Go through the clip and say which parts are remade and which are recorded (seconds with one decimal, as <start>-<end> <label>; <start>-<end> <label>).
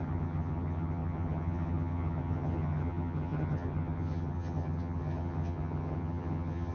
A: 0.0-6.7 remade